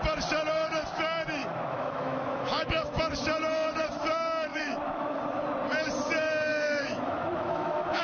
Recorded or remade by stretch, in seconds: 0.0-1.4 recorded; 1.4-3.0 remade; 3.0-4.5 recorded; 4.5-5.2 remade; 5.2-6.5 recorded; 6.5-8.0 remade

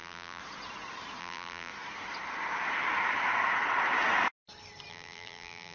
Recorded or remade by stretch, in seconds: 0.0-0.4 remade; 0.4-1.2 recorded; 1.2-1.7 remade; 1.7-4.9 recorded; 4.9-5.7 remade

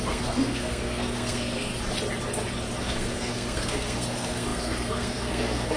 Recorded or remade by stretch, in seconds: 0.0-1.7 remade; 1.7-2.8 recorded; 2.8-5.8 remade

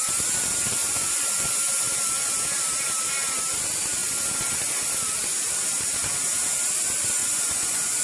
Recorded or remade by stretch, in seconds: 0.0-0.8 recorded; 0.8-1.9 remade; 1.9-7.2 recorded; 7.2-8.0 remade

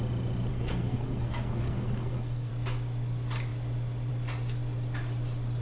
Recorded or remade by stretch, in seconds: 0.0-0.5 recorded; 0.5-2.5 remade; 2.5-5.6 recorded

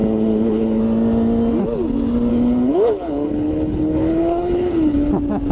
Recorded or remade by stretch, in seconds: 0.0-0.8 remade; 0.8-2.3 recorded; 2.3-5.1 remade; 5.1-5.5 recorded